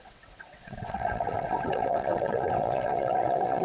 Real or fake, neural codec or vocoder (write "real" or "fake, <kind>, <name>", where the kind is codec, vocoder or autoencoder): fake, vocoder, WaveNeXt